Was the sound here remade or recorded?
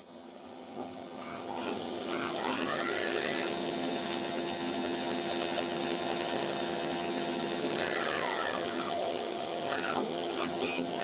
remade